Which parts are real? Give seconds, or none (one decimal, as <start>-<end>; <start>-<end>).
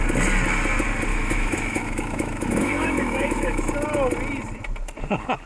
0.0-1.1; 3.7-5.5